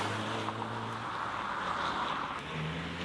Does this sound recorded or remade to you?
recorded